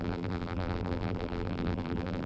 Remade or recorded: remade